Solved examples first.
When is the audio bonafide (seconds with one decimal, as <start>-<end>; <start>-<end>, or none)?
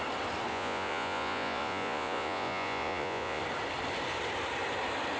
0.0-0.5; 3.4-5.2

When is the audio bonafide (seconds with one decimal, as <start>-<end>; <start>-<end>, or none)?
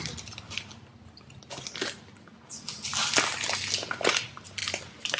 0.0-5.2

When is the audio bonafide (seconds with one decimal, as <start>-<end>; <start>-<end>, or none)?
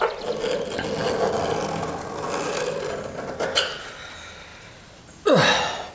0.0-5.9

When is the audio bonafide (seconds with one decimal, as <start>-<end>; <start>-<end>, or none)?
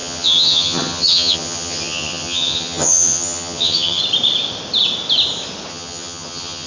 4.0-5.7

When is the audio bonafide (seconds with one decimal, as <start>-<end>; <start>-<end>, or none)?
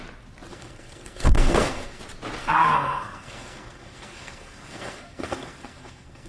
0.0-0.5; 2.0-2.4